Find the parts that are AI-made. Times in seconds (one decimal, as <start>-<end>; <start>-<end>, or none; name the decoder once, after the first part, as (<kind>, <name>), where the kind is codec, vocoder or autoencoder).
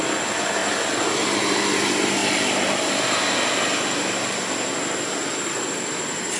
none